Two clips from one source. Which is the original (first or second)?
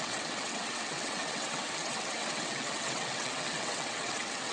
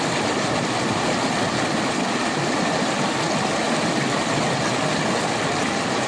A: second